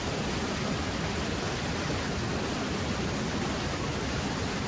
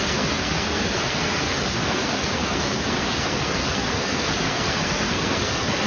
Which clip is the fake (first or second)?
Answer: second